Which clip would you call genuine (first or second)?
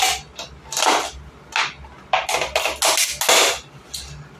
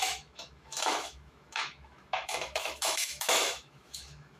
first